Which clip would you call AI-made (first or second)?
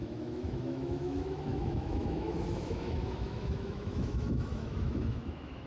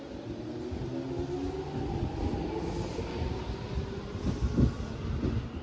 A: first